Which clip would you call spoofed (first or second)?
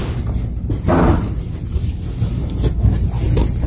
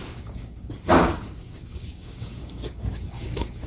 second